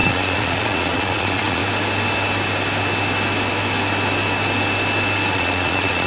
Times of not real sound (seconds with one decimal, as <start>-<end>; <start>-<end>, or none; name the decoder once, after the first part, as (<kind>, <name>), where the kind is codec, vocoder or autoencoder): 0.0-1.6 (vocoder, Vocos); 5.3-6.1